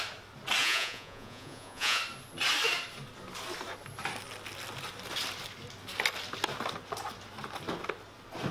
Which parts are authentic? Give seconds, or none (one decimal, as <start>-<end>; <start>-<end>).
0.0-0.6; 2.0-8.5